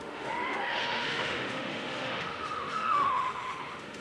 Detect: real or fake fake